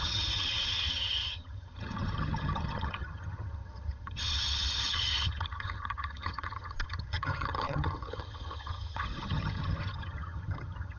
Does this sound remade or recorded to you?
remade